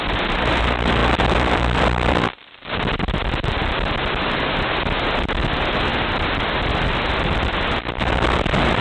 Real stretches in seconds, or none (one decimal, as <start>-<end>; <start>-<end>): 0.0-1.0; 3.3-8.8